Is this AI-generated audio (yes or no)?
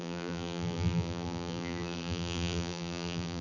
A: yes